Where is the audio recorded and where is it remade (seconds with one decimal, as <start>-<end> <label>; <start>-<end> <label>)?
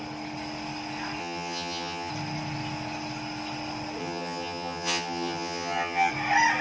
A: 0.0-1.2 recorded; 1.2-2.1 remade; 2.1-4.0 recorded; 4.0-6.1 remade; 6.1-6.6 recorded